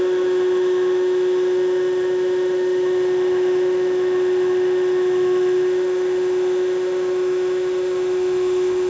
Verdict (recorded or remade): remade